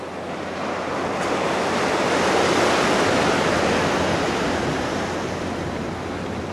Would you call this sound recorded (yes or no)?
yes